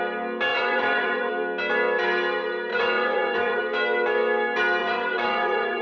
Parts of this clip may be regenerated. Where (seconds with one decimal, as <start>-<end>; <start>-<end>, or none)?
0.5-1.3; 2.7-3.6; 4.8-5.8